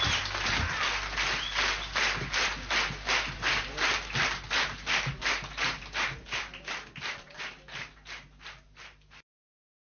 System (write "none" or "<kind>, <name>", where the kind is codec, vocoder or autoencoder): none